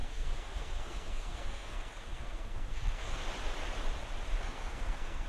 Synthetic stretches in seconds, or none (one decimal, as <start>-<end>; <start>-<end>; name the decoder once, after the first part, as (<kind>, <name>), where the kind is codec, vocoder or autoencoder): 0.0-3.2 (codec, SNAC); 4.4-5.3